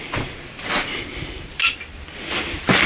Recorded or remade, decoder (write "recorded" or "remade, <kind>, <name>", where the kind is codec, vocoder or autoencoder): recorded